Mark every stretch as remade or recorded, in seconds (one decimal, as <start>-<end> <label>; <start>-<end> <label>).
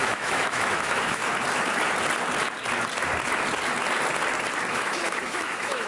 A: 0.0-1.2 remade; 1.2-4.7 recorded; 4.7-5.9 remade